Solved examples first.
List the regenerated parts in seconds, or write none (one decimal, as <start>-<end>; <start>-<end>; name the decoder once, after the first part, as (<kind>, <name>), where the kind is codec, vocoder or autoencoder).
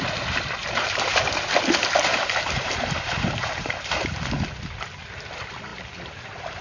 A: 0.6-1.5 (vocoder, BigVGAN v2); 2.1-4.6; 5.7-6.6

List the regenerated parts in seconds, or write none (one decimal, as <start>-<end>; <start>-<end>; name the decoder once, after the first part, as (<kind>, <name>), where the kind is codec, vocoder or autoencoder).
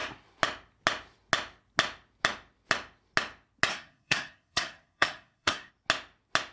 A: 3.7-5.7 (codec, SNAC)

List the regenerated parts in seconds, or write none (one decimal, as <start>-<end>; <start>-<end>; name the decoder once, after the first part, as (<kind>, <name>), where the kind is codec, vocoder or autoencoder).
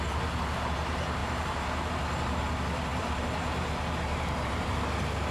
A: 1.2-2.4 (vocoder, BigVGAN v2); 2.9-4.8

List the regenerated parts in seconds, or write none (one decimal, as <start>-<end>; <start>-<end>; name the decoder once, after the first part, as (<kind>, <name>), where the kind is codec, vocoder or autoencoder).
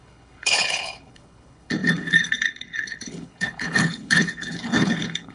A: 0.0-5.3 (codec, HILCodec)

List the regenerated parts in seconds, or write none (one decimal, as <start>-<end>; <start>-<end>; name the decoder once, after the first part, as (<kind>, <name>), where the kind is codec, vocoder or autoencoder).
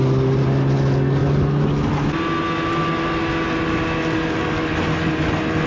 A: none